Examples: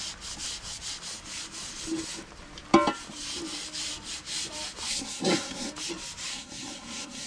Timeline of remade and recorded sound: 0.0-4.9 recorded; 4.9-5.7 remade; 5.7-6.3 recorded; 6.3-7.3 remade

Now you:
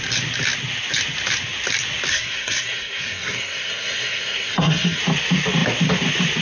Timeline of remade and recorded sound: 0.0-2.1 recorded; 2.1-5.0 remade; 5.0-6.4 recorded